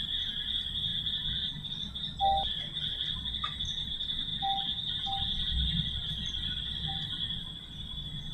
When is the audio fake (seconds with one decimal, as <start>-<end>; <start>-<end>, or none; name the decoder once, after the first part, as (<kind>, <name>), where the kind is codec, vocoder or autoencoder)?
none